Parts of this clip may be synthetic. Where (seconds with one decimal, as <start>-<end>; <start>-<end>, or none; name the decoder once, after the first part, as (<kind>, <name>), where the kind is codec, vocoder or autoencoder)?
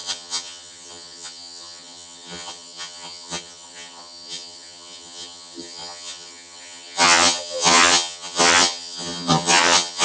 0.0-10.0 (vocoder, HiFi-GAN)